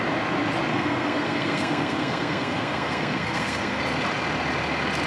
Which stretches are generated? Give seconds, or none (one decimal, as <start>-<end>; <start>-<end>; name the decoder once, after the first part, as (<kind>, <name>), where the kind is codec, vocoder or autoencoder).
0.7-3.8 (codec, SNAC)